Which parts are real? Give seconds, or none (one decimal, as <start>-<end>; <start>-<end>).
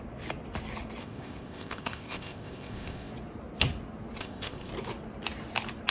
0.0-1.0; 3.1-4.2; 4.7-5.9